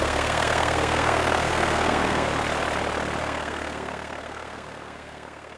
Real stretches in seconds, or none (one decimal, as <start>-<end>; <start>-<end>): 2.3-3.2